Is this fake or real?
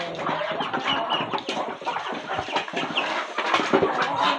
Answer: real